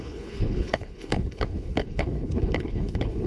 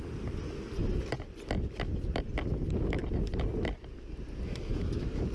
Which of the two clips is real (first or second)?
second